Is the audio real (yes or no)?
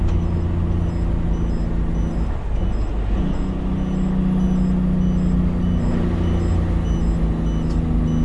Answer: yes